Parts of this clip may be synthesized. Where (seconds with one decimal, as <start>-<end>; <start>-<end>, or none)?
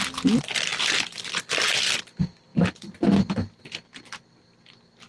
none